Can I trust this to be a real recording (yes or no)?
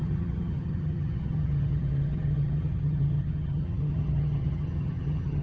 no